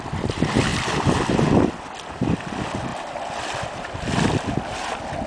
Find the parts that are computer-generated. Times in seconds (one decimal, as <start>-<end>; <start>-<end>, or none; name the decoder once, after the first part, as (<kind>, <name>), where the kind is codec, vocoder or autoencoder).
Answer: 0.7-1.3 (vocoder, BigVGAN v2); 2.9-4.6